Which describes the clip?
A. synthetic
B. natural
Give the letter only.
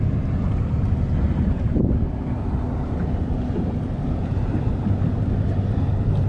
A